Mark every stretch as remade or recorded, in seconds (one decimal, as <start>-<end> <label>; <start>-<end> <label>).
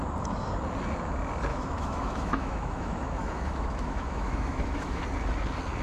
0.0-1.5 recorded; 1.5-5.0 remade; 5.0-5.8 recorded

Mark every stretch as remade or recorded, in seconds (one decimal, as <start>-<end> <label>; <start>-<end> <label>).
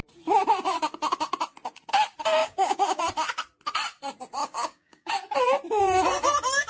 0.0-2.4 recorded; 2.4-3.0 remade; 3.0-4.4 recorded; 4.4-5.1 remade; 5.1-6.7 recorded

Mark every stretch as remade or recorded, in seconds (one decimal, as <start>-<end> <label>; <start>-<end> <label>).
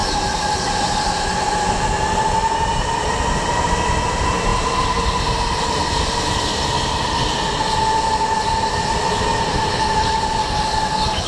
0.0-11.3 recorded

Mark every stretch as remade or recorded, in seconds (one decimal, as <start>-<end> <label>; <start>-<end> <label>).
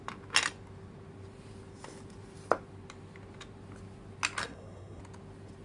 0.0-4.4 recorded; 4.4-5.0 remade; 5.0-5.6 recorded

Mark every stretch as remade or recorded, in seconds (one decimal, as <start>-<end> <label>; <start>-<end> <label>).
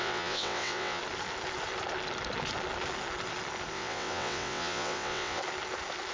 0.0-1.0 remade; 1.0-3.7 recorded; 3.7-5.4 remade; 5.4-6.1 recorded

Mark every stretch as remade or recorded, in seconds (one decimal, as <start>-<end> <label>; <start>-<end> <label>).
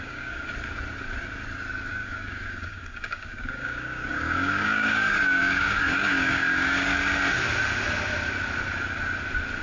0.0-0.5 remade; 0.5-1.9 recorded; 1.9-6.9 remade; 6.9-9.6 recorded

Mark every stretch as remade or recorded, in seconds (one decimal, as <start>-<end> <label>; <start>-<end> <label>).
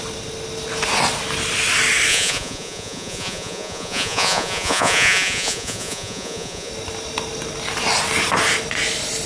0.0-2.1 recorded; 2.1-6.7 remade; 6.7-9.3 recorded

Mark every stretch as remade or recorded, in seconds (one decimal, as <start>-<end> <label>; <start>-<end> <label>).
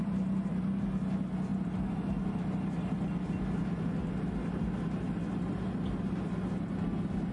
0.0-7.3 recorded